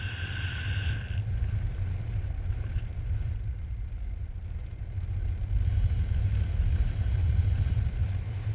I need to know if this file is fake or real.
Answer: real